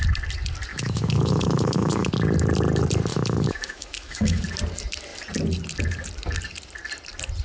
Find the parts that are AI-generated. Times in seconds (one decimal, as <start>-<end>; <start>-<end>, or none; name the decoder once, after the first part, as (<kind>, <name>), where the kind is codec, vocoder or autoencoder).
0.7-2.1 (autoencoder, DAC-VAE); 3.1-4.4